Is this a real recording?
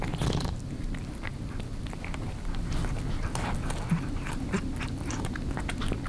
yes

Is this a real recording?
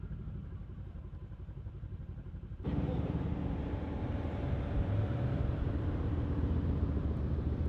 no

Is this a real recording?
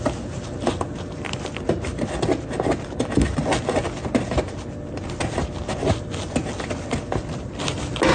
yes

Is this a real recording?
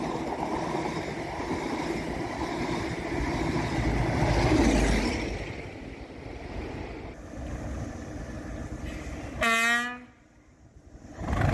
yes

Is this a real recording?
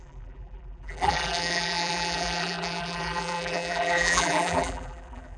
no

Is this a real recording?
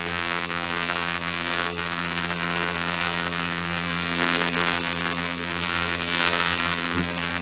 no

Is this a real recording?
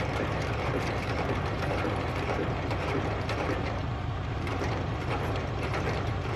no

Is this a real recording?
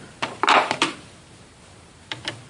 no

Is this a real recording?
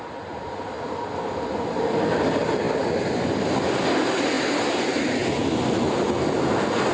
yes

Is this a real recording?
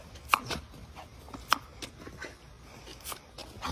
yes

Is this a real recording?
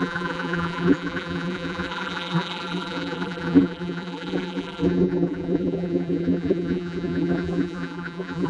no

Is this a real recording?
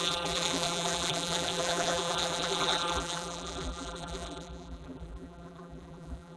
no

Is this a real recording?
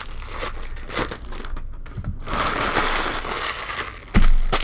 yes